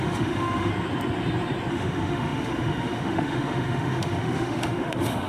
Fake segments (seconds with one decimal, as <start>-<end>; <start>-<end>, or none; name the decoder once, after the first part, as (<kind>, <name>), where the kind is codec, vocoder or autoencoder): 0.0-0.7 (autoencoder, DAC-VAE); 1.7-5.3